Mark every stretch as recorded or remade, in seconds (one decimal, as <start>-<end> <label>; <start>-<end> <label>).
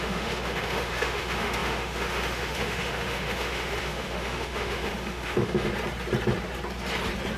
0.0-5.7 remade; 5.7-7.4 recorded